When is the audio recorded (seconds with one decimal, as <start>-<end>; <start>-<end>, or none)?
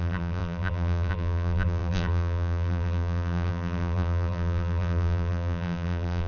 none